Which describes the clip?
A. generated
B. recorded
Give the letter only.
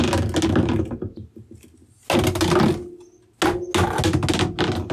B